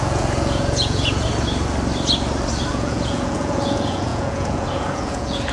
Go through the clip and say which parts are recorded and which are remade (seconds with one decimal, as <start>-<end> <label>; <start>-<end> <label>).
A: 0.0-1.3 remade; 1.3-2.7 recorded; 2.7-5.5 remade